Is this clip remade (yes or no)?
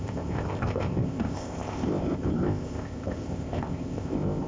yes